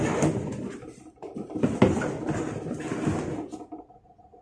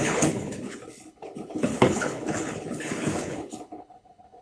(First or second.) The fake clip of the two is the second